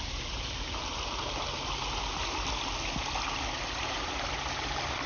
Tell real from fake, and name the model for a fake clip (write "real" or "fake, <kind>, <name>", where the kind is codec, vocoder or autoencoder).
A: real